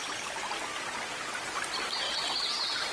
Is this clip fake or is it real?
real